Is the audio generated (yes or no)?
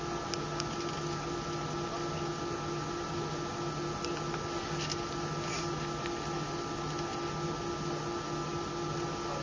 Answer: no